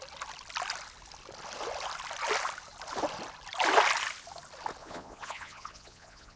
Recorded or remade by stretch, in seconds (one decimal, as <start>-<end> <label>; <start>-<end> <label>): 0.0-4.8 recorded; 4.8-6.4 remade